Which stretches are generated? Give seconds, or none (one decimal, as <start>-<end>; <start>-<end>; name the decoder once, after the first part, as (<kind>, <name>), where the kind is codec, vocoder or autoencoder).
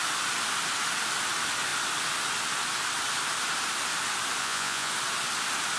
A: 4.4-4.9 (vocoder, Vocos)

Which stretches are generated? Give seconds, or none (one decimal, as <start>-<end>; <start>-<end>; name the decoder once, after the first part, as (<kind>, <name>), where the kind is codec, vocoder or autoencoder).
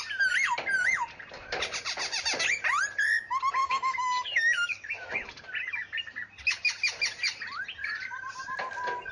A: 3.6-5.3 (autoencoder, DAC-VAE)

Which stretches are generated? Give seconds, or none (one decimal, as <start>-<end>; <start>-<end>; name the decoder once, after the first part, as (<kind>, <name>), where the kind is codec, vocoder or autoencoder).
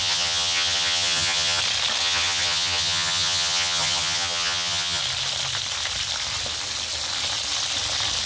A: 0.0-1.6 (vocoder, HiFi-GAN); 2.0-5.0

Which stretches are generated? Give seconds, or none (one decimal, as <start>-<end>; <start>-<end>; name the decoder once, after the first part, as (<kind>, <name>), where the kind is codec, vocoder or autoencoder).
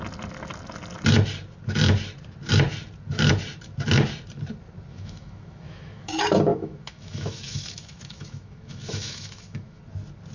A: 4.9-6.1 (autoencoder, DAC-VAE); 6.5-9.8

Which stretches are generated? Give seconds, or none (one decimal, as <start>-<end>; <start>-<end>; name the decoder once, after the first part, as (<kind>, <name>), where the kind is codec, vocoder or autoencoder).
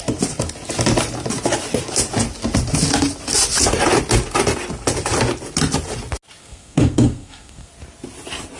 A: 6.4-7.7 (codec, SNAC)